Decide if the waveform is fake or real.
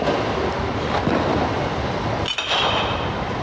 real